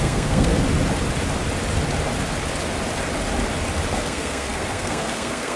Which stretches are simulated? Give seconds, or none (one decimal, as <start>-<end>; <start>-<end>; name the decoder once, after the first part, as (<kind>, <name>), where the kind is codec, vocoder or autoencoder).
0.0-0.5 (codec, SNAC); 3.9-5.6